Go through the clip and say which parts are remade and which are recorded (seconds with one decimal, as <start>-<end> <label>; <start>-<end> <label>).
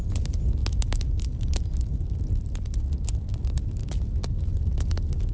0.0-5.3 recorded